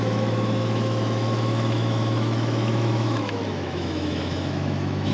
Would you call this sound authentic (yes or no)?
no